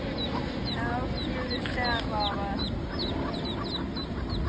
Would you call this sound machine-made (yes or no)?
no